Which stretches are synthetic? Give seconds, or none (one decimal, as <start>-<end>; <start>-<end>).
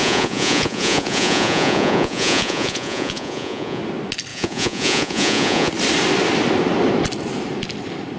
0.0-3.8; 4.3-5.7